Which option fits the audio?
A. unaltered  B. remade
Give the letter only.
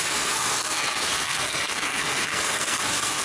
B